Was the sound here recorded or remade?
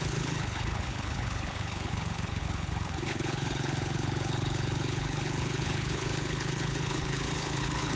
remade